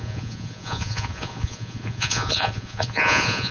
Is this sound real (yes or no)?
no